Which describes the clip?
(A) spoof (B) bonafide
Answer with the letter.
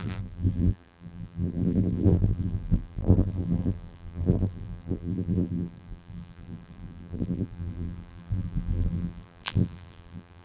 A